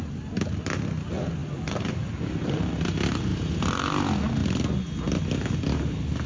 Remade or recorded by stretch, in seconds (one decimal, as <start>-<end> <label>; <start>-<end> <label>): 0.0-3.3 recorded; 3.3-3.9 remade; 3.9-6.3 recorded